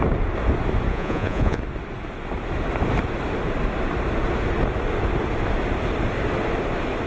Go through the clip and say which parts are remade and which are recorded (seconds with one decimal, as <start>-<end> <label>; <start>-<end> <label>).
0.0-0.9 recorded; 0.9-1.6 remade; 1.6-7.1 recorded